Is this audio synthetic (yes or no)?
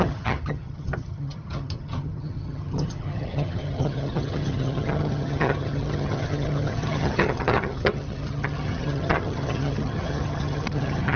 yes